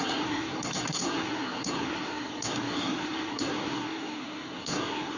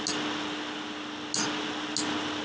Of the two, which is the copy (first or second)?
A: first